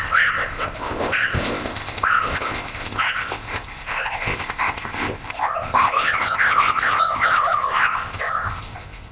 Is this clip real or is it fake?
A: fake